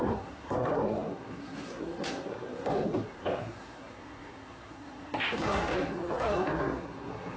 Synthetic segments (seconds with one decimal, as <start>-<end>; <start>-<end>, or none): 0.0-7.4